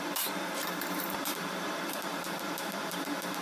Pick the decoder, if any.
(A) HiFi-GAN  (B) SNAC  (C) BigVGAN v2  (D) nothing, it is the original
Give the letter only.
C